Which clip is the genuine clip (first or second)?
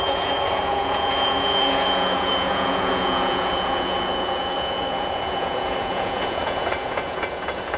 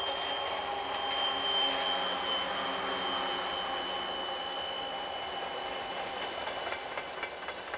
second